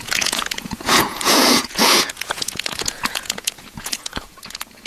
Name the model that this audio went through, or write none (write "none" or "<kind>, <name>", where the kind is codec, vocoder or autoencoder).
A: vocoder, Vocos